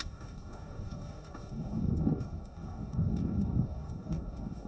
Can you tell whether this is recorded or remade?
remade